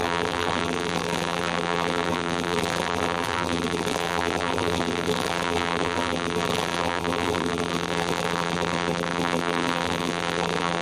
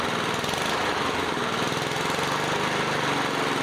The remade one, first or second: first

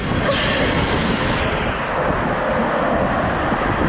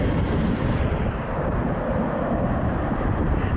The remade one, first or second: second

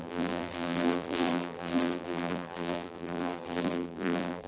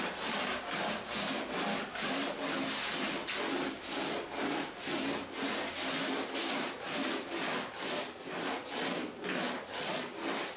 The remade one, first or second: first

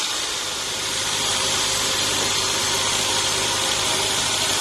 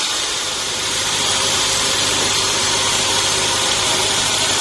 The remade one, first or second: second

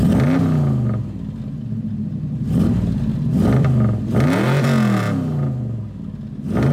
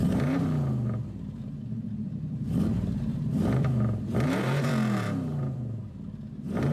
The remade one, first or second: second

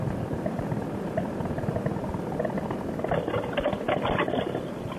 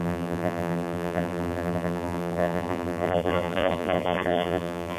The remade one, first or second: second